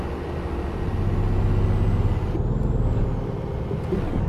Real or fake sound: real